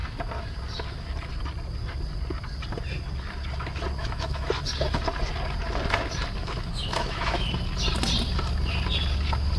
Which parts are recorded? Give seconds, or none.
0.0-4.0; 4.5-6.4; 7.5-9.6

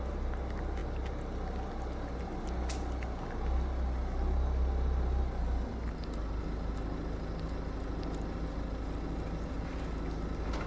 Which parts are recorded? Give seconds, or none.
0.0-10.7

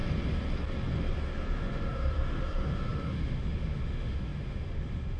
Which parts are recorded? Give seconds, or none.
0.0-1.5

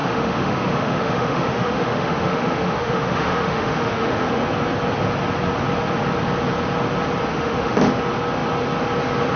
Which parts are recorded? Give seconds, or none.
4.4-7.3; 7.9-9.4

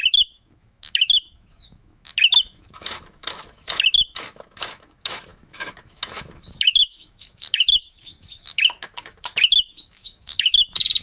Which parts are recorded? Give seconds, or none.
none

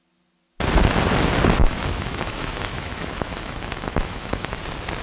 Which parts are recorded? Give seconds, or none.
0.0-1.6; 4.6-5.0